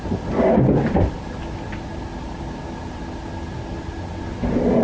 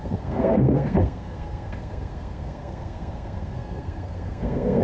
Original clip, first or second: first